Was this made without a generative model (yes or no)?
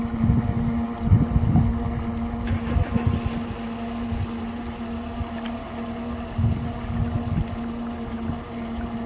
yes